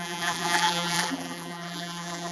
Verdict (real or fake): fake